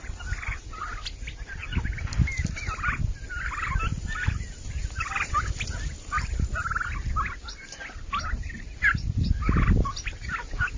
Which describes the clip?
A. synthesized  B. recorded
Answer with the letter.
B